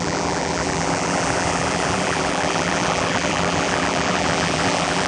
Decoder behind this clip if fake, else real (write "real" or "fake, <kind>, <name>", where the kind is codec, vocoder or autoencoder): fake, vocoder, BigVGAN v2